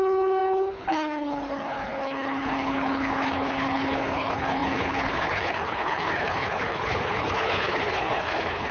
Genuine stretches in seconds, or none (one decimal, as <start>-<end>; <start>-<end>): none